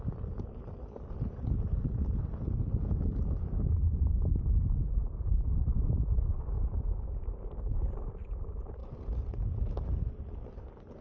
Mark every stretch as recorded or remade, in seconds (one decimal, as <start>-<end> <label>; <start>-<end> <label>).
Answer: 0.0-11.0 recorded